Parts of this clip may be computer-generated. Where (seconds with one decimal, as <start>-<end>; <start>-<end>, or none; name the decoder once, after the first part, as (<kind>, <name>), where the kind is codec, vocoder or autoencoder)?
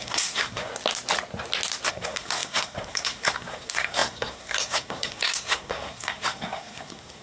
0.0-0.7 (codec, SNAC); 1.9-7.2